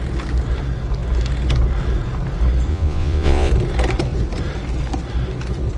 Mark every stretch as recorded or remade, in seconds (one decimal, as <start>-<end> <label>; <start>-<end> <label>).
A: 0.0-2.7 recorded; 2.7-3.5 remade; 3.5-5.8 recorded